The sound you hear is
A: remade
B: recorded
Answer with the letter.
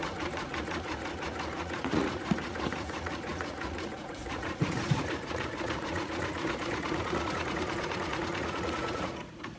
A